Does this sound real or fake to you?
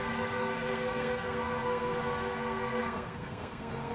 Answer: fake